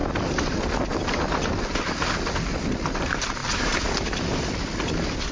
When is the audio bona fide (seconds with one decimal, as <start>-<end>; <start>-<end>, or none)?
0.0-5.3